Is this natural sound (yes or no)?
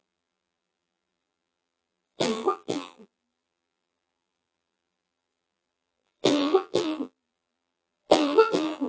no